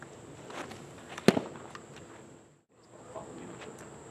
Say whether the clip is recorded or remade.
recorded